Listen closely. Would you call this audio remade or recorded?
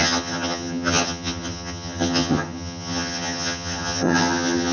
remade